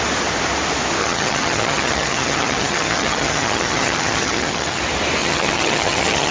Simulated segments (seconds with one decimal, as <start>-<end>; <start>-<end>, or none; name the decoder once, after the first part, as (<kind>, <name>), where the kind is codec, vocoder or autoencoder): 1.0-4.8 (vocoder, HiFi-GAN); 5.2-6.3